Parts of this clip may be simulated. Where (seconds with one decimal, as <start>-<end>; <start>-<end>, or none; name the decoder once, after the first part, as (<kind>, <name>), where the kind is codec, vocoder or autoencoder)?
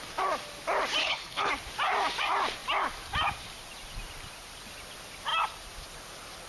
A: 1.0-1.5 (codec, HILCodec)